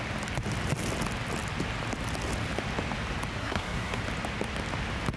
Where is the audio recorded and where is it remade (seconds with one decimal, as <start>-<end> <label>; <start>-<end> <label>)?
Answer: 0.0-3.4 recorded; 3.4-4.0 remade; 4.0-5.2 recorded